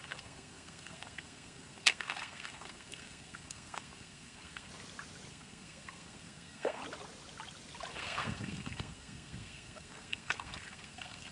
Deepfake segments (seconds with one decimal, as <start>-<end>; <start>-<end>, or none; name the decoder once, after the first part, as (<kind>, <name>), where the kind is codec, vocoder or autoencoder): 0.0-4.7 (codec, SNAC); 5.3-6.8; 7.9-11.3